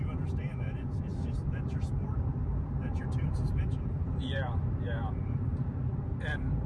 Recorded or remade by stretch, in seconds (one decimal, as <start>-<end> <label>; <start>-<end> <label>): 0.0-6.7 remade